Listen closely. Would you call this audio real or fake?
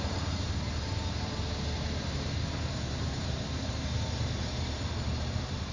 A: fake